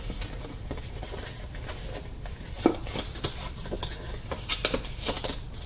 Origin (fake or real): real